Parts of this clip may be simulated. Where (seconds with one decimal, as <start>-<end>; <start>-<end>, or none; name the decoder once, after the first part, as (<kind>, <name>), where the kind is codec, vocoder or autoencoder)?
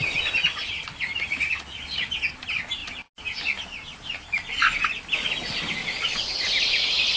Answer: 5.8-6.3 (vocoder, Vocos)